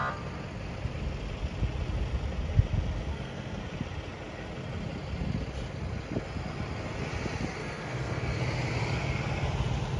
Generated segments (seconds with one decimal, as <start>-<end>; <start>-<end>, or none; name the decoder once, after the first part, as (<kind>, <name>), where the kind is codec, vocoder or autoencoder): 3.1-3.6 (codec, SNAC); 7.6-8.4